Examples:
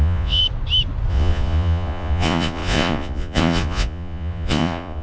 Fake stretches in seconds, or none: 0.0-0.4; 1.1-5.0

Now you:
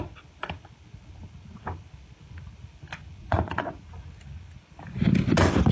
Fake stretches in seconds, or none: 3.2-3.9

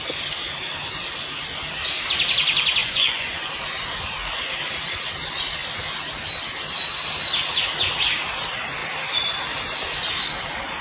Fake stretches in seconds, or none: 2.8-3.5

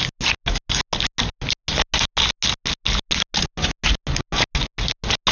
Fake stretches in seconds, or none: none

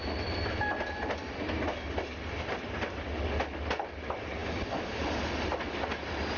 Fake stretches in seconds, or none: none

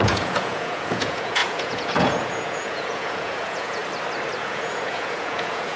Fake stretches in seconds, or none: 0.0-3.8; 4.4-5.8

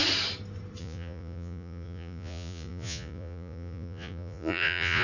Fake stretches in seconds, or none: 0.8-5.0